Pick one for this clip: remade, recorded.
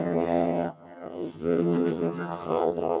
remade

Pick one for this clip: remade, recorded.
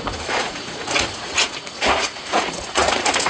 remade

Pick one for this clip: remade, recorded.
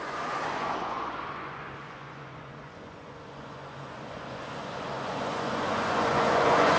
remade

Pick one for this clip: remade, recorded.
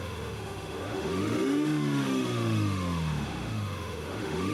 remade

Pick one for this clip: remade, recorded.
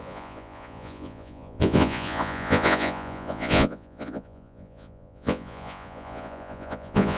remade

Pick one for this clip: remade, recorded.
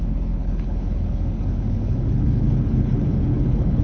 remade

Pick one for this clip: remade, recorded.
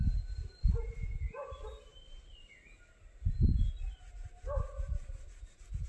recorded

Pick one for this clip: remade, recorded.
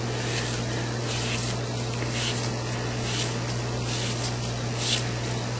recorded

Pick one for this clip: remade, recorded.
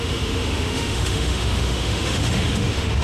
remade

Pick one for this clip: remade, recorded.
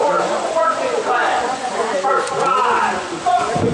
remade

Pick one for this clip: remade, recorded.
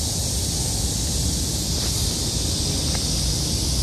recorded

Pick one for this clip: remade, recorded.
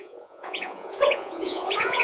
remade